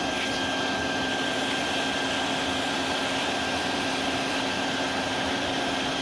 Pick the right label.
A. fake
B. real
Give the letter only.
B